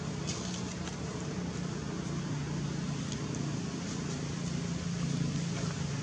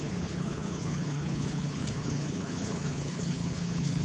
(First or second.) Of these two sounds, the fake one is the second